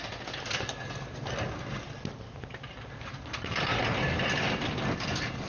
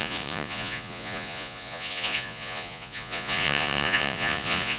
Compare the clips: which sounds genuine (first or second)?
first